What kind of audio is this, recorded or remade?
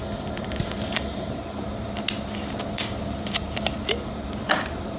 recorded